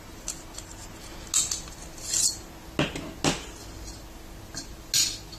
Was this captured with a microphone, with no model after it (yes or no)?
yes